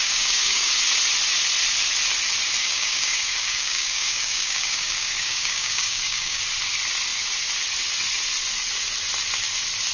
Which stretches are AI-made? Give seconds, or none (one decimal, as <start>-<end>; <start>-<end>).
0.0-0.7; 2.6-6.4